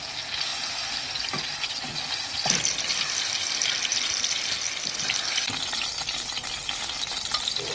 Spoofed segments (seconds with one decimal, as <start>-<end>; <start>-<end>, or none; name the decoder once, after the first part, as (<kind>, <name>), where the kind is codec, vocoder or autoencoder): none